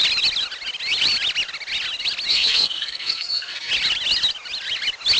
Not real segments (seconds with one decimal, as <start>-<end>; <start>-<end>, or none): 2.3-3.7